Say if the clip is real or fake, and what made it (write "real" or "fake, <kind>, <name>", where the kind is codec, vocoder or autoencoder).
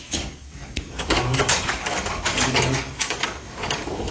fake, codec, DAC